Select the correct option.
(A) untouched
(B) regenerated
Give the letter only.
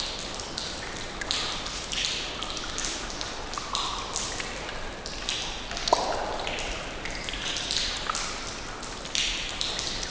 A